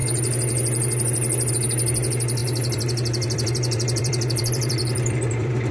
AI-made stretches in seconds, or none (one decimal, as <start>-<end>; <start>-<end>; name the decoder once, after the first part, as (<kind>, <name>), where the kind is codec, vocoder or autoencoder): 2.4-5.7 (vocoder, BigVGAN v2)